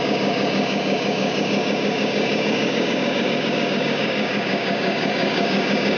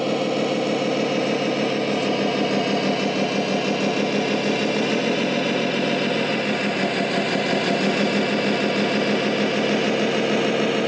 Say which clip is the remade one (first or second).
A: first